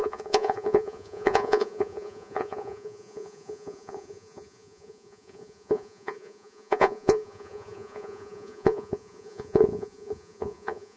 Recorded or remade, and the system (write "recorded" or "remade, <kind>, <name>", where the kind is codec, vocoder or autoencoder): remade, vocoder, Vocos